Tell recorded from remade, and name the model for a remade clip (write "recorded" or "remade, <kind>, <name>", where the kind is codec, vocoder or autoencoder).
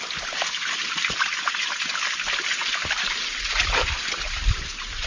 recorded